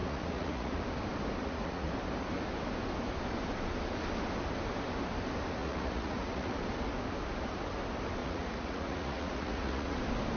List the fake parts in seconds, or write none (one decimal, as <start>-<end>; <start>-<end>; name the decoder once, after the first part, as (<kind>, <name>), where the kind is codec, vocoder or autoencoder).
0.0-0.8 (vocoder, Vocos); 1.4-1.9; 5.6-6.6; 8.2-10.0

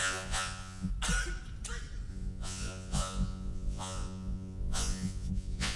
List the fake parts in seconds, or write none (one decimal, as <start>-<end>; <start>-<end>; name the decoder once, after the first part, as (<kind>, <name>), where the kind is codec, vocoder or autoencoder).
0.0-0.9 (vocoder, Vocos); 2.1-5.8

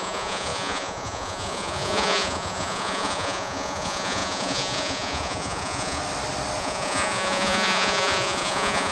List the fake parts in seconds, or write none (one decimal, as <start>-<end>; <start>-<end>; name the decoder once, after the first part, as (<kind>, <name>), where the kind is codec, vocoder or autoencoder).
0.0-6.0 (vocoder, Vocos); 6.6-8.9

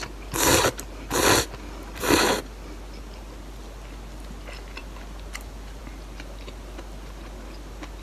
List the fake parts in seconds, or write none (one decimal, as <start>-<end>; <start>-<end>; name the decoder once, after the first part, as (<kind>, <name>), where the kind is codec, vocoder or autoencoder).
none

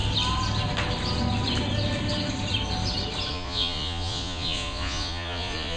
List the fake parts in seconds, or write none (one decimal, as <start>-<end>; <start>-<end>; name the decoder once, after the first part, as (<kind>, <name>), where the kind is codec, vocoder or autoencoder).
3.3-5.8 (vocoder, Vocos)

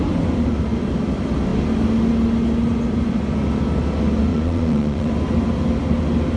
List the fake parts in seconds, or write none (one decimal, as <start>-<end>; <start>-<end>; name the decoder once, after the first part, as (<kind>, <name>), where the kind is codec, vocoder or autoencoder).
4.3-5.1 (vocoder, Vocos)

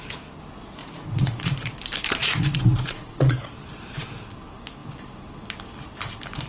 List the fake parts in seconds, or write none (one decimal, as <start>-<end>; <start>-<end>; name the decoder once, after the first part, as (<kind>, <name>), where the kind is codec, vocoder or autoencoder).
0.8-1.7 (vocoder, Vocos); 2.2-3.5

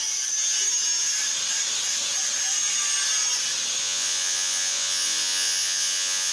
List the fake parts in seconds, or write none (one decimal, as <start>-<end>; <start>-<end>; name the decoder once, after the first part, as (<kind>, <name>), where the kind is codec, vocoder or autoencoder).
3.8-6.3 (vocoder, Vocos)